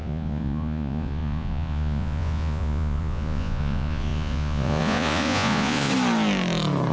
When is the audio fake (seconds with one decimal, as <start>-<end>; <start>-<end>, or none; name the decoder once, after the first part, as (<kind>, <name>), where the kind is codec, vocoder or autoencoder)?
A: 0.0-5.9 (vocoder, Vocos)